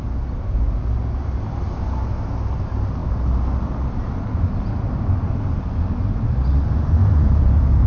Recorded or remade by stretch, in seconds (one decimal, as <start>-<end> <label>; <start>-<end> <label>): 0.0-7.0 recorded; 7.0-7.9 remade